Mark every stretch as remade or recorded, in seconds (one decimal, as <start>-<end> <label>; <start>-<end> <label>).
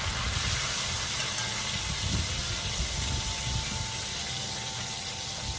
0.0-5.6 recorded